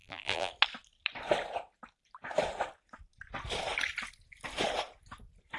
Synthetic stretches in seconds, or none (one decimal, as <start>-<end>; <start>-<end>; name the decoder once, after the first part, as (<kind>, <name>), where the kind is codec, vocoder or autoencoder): 0.0-0.5 (vocoder, BigVGAN v2)